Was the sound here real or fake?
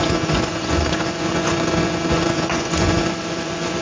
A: fake